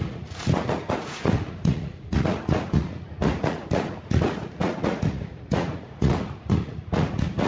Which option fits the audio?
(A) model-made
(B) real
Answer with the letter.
A